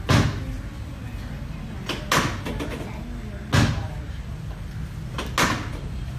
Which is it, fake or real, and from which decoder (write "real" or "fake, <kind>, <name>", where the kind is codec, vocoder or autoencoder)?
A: real